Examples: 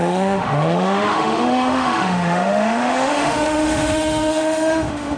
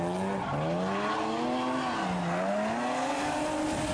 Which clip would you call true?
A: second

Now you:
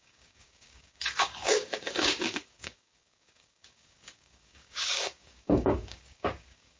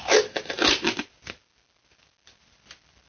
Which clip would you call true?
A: second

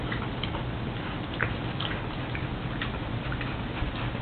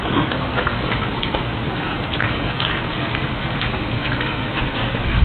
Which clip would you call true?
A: first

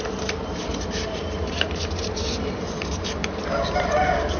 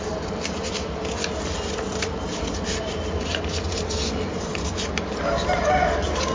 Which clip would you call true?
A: second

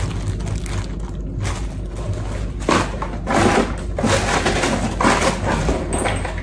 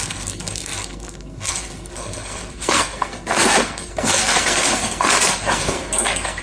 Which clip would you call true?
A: first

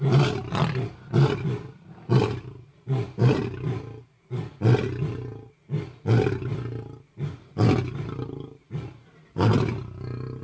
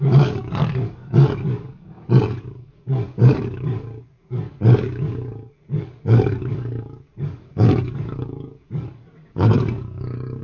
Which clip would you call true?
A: first